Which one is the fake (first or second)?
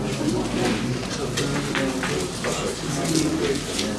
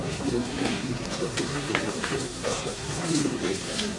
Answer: second